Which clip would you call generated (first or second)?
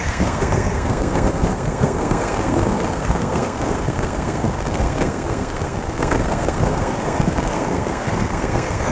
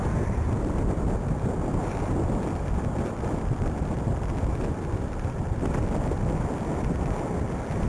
first